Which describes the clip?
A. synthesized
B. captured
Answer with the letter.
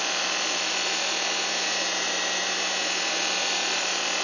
B